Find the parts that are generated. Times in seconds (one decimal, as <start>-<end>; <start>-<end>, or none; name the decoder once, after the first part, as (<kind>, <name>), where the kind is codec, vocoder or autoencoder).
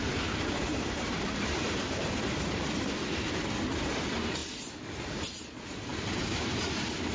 0.0-7.1 (vocoder, BigVGAN v2)